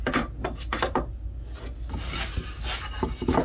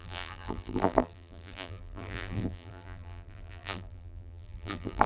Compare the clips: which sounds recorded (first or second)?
first